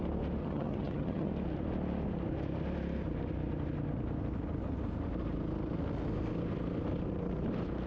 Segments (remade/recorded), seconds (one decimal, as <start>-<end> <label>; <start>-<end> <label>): 0.0-0.4 recorded; 0.4-1.3 remade; 1.3-7.9 recorded